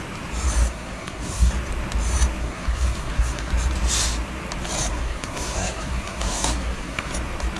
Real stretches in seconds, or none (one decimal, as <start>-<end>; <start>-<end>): 0.0-0.6; 1.5-2.4; 3.5-4.9; 7.1-7.6